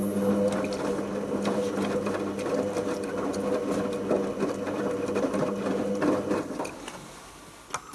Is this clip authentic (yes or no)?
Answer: yes